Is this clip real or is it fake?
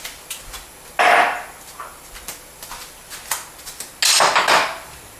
real